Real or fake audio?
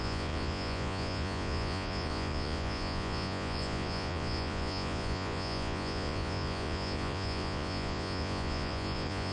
fake